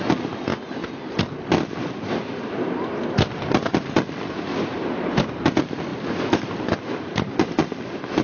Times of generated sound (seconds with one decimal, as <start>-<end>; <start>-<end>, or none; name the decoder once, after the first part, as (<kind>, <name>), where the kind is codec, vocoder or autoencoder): none